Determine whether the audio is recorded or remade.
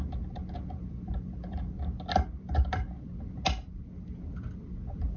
recorded